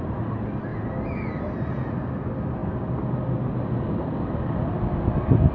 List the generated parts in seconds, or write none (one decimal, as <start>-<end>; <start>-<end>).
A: none